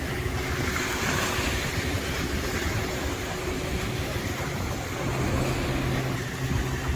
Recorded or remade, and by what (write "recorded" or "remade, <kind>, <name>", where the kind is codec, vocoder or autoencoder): recorded